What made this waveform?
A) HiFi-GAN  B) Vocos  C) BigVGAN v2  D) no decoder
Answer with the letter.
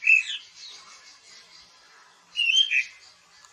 D